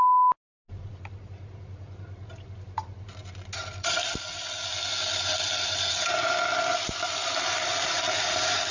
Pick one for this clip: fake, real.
real